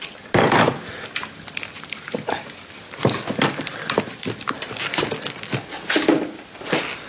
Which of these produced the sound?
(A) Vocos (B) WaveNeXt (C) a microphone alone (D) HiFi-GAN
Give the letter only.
C